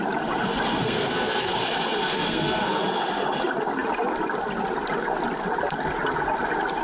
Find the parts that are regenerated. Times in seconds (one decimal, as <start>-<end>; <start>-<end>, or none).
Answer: 0.8-1.5; 2.0-2.8